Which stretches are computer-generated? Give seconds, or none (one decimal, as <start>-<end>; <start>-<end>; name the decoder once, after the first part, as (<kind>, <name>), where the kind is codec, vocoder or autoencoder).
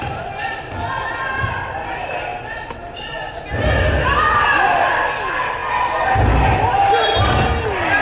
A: none